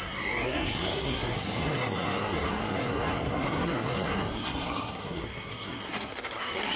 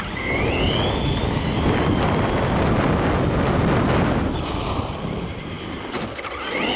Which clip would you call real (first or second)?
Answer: second